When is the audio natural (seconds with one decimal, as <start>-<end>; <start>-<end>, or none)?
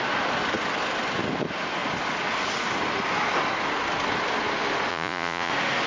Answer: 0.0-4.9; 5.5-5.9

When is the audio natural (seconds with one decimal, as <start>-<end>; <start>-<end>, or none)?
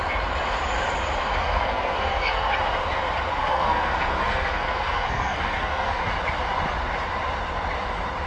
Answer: 0.0-1.4; 2.6-3.3; 6.0-8.3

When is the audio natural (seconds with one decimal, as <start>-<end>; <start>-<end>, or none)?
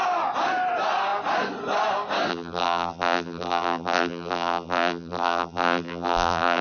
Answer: 0.0-2.3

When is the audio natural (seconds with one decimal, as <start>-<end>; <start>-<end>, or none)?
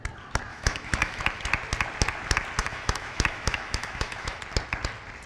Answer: 0.0-0.5; 1.2-2.6; 4.4-5.3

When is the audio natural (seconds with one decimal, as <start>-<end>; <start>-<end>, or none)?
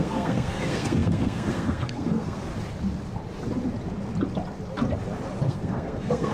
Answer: 2.5-5.4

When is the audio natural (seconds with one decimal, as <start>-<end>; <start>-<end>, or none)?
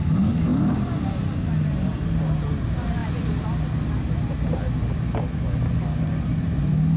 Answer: 0.0-7.0